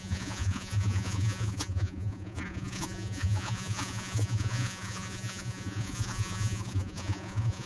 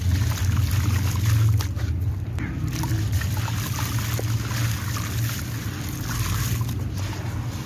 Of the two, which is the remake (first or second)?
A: first